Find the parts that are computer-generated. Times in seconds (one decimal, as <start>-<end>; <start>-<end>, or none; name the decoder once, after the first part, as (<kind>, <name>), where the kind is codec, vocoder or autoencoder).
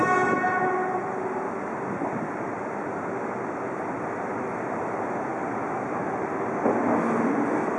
none